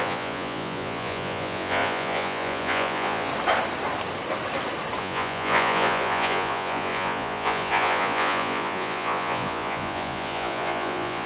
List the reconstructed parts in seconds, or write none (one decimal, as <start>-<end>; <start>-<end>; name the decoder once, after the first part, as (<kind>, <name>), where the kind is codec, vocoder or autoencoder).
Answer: 0.0-3.3 (vocoder, Vocos); 5.0-11.3